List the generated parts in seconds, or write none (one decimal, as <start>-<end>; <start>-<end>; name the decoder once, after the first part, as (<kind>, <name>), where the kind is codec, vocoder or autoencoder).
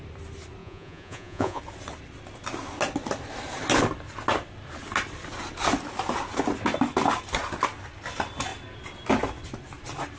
0.6-1.6 (vocoder, Vocos)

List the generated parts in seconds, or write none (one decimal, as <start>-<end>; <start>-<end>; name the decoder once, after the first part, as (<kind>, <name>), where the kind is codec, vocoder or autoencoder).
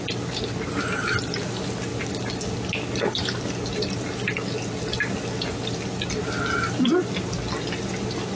none